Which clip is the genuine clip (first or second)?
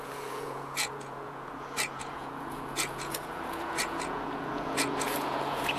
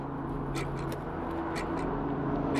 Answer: second